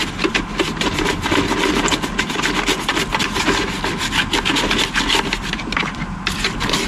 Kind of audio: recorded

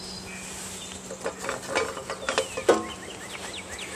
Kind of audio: recorded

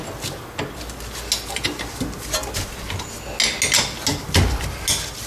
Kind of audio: recorded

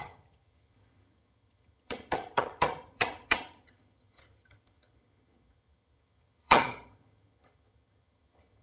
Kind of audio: remade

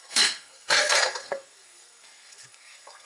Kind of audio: remade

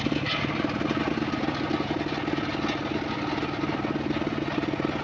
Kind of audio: recorded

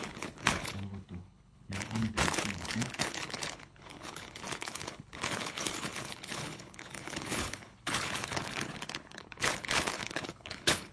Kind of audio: remade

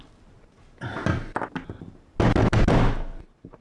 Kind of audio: recorded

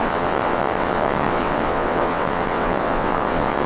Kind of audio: remade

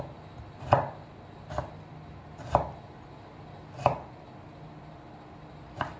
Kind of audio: recorded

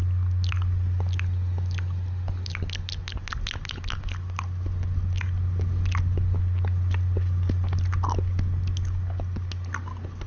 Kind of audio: recorded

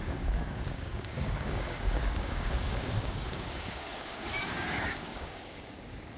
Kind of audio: remade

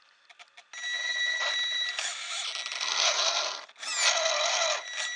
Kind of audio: recorded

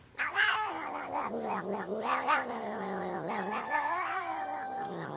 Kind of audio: remade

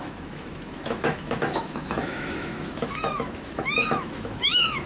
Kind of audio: remade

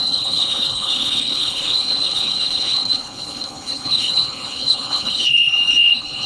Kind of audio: remade